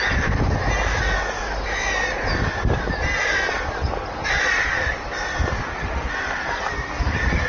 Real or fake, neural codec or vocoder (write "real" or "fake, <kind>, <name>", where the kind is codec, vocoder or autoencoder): real